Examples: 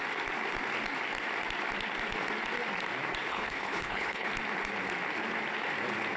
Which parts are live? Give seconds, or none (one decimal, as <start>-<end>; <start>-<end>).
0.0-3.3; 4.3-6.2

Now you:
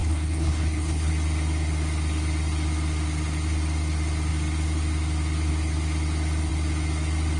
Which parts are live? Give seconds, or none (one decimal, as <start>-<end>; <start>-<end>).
1.1-7.4

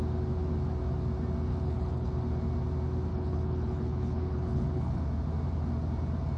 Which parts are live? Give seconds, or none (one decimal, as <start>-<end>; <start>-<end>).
0.0-1.5; 2.1-3.1; 5.0-6.4

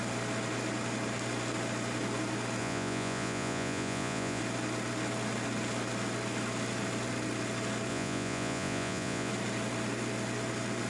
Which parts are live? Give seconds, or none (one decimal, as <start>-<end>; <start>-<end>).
0.0-2.6; 4.4-7.9; 9.3-10.9

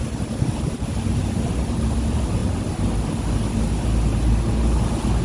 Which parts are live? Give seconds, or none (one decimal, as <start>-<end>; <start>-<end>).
0.0-5.2